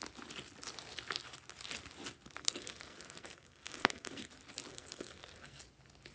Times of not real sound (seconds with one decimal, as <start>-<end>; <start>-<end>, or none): 2.4-4.3; 4.7-5.6